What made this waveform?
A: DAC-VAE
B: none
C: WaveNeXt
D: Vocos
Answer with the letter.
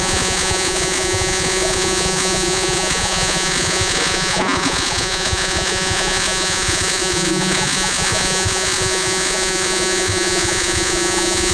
D